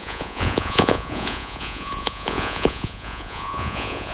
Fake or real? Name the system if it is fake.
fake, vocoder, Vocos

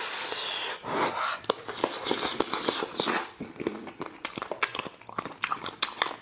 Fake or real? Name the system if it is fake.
real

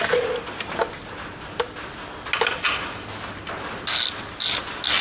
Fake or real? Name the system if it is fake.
real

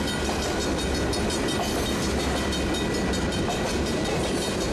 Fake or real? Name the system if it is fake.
real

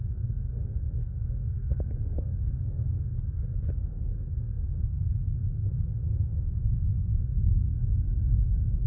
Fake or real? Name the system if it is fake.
fake, codec, SNAC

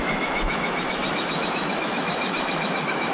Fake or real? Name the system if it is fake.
fake, autoencoder, DAC-VAE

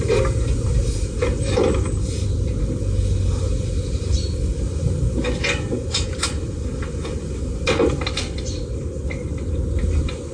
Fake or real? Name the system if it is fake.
real